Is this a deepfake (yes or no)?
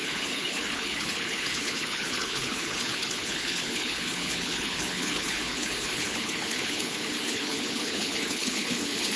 yes